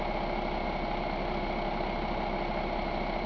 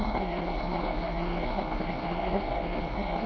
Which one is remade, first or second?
second